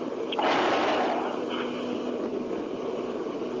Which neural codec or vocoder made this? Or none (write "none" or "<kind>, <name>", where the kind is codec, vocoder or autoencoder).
none